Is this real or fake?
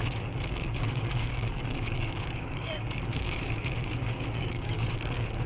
fake